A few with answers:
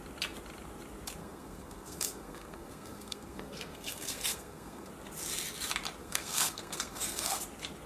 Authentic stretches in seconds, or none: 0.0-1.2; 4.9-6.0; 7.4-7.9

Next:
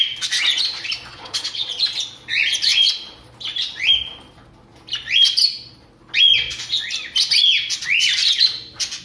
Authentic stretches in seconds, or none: 0.0-1.1; 1.7-9.0

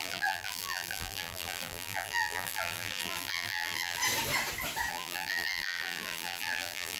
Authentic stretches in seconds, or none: 4.0-4.9

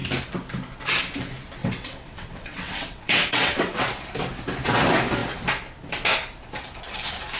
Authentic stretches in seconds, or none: 0.0-1.6; 3.8-7.4

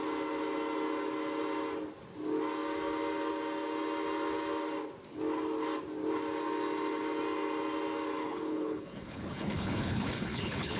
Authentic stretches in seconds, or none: 0.0-8.2

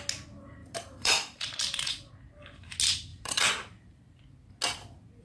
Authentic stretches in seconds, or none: 0.0-0.6; 2.1-3.1; 4.2-5.2

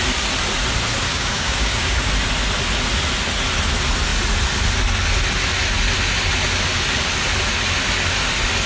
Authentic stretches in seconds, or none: 0.0-1.1; 2.1-8.7

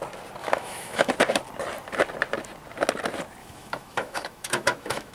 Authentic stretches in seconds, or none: 0.0-0.4; 1.1-3.4